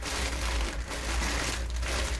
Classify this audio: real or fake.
real